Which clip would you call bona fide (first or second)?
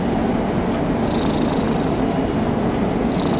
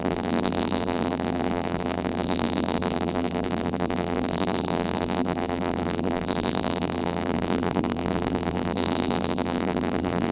first